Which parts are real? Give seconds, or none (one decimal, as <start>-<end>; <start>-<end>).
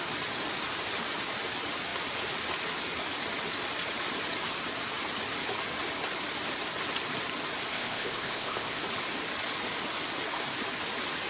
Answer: 0.0-7.7; 8.8-11.3